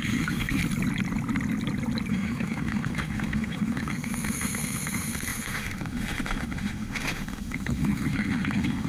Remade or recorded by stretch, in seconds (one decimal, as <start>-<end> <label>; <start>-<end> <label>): 0.0-0.6 remade; 0.6-2.1 recorded; 2.1-8.9 remade